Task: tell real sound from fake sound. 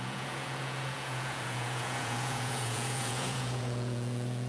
fake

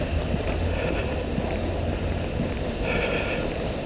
real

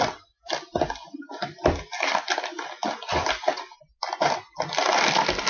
real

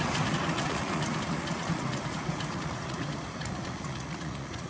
fake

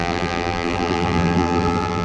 fake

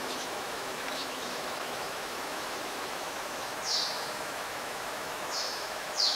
fake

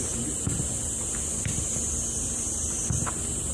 real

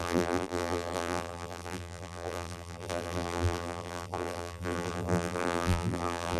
fake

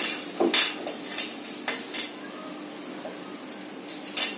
real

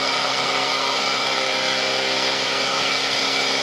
fake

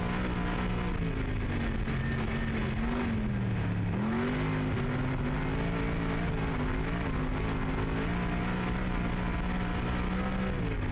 real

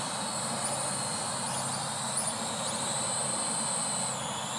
real